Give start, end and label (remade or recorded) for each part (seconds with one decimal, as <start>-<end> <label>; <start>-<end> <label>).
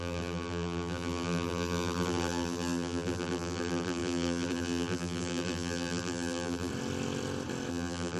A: 0.0-6.7 remade; 6.7-7.7 recorded; 7.7-8.2 remade